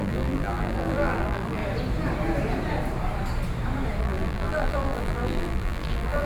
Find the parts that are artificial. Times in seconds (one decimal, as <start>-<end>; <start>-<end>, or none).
0.0-1.6; 4.0-6.2